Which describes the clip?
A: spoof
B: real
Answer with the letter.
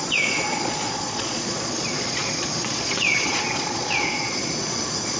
A